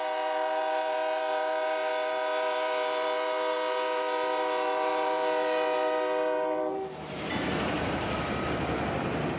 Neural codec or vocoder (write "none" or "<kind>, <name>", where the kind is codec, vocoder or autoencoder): vocoder, BigVGAN v2